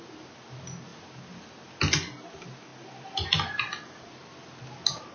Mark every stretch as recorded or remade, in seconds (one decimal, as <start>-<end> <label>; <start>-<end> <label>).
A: 0.0-5.1 recorded

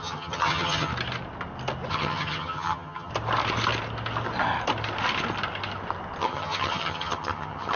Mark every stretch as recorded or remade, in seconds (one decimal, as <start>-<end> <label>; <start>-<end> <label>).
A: 0.0-0.9 remade; 0.9-1.9 recorded; 1.9-3.1 remade; 3.1-6.2 recorded; 6.2-7.8 remade

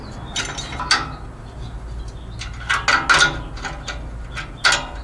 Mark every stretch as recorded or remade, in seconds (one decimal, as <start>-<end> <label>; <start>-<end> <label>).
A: 0.0-5.0 recorded

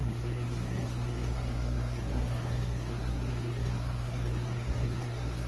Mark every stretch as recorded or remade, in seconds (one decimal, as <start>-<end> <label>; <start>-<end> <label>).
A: 0.0-5.5 remade

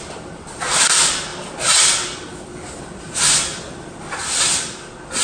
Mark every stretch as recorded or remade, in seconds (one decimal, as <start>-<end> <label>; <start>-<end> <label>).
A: 0.0-5.2 recorded

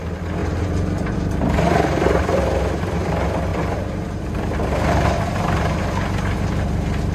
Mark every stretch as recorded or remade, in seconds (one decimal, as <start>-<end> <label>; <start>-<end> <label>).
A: 0.0-0.4 recorded; 0.4-3.1 remade; 3.1-3.5 recorded; 3.5-5.8 remade; 5.8-7.1 recorded

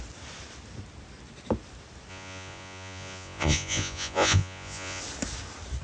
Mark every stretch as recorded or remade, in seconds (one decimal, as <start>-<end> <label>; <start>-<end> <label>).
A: 0.0-2.1 recorded; 2.1-5.0 remade; 5.0-5.8 recorded

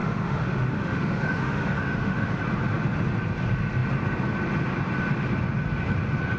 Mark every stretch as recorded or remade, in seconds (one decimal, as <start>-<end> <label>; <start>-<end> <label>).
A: 0.0-2.4 remade; 2.4-6.4 recorded